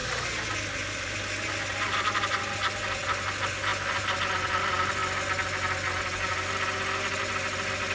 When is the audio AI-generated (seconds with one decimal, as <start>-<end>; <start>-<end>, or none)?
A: none